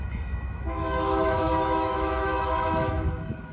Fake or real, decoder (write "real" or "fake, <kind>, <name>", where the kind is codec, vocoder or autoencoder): fake, autoencoder, DAC-VAE